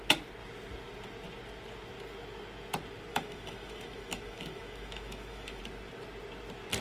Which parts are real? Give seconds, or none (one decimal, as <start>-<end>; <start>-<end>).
0.0-3.1; 5.6-6.8

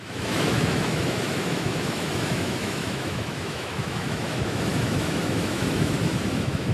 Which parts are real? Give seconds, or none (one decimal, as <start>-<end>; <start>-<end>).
none

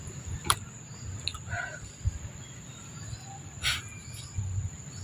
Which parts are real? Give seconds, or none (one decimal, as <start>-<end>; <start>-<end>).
0.0-5.0

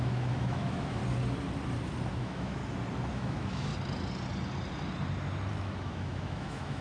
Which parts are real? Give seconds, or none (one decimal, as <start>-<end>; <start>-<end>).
1.0-2.1; 2.6-3.1; 3.7-5.5

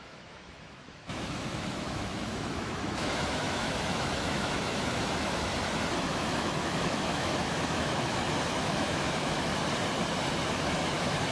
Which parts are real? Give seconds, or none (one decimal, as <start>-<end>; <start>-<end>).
5.5-6.1; 9.5-10.5

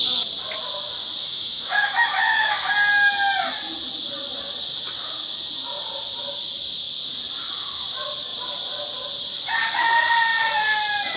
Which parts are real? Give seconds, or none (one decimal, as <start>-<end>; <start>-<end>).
0.0-1.2; 2.5-11.2

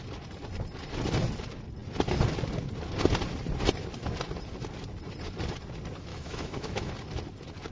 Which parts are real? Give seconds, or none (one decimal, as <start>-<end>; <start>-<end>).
0.0-6.1; 6.9-7.7